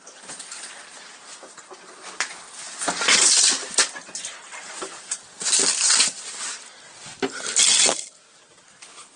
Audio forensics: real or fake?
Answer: real